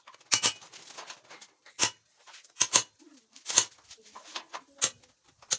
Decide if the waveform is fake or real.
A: real